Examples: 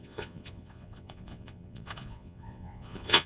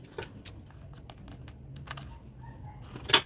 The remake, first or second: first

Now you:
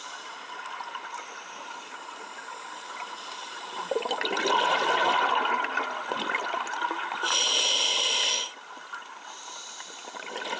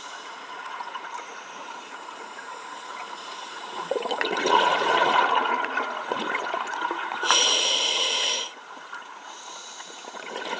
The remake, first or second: second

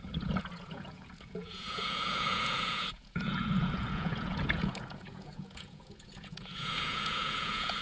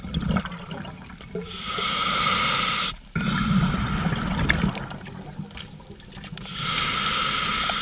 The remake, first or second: first